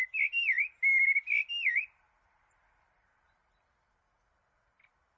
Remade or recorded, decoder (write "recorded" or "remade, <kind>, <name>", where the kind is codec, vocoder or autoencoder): recorded